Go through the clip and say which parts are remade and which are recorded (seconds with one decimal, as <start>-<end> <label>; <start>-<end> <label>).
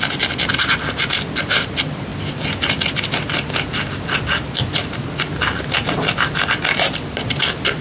0.0-7.8 recorded